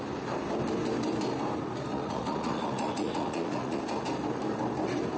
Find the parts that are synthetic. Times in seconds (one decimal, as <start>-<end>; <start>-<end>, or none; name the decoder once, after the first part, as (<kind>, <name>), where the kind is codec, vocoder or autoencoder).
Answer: 1.9-3.8 (vocoder, Vocos)

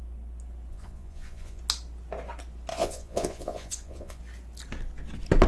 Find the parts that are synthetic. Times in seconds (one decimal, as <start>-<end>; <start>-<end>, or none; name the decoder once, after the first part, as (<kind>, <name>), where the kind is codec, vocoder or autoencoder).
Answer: 0.7-1.6 (vocoder, Vocos); 2.7-4.2

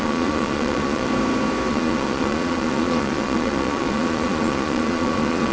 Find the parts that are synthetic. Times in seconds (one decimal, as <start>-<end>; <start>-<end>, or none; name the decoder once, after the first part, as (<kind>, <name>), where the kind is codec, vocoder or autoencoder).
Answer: 0.0-1.1 (vocoder, Vocos); 1.7-5.5